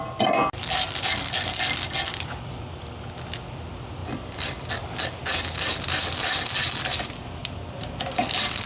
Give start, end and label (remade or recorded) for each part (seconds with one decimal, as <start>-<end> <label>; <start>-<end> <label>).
0.0-4.0 recorded; 4.0-4.7 remade; 4.7-7.4 recorded; 7.4-8.7 remade

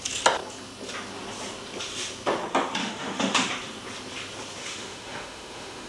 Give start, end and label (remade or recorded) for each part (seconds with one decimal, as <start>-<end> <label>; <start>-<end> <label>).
0.0-2.8 recorded; 2.8-3.5 remade; 3.5-4.6 recorded; 4.6-5.9 remade

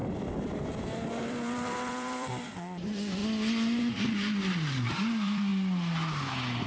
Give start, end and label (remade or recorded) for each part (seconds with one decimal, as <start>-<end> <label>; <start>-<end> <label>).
0.0-0.6 recorded; 0.6-5.5 remade; 5.5-6.7 recorded

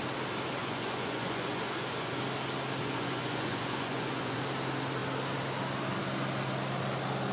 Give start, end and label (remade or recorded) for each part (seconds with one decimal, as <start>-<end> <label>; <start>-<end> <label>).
0.0-0.6 recorded; 0.6-2.2 remade; 2.2-2.8 recorded; 2.8-4.4 remade; 4.4-7.3 recorded

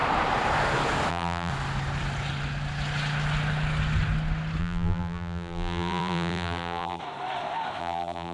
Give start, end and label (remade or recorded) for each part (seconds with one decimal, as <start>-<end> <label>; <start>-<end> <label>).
0.0-1.1 recorded; 1.1-1.5 remade; 1.5-4.6 recorded; 4.6-7.0 remade; 7.0-7.8 recorded; 7.8-8.3 remade